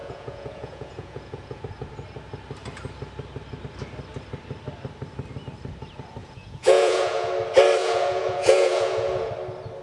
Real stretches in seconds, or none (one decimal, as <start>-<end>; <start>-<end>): 1.6-6.2; 7.3-7.8; 9.3-9.8